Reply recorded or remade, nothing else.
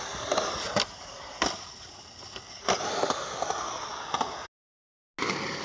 recorded